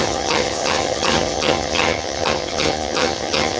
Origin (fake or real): fake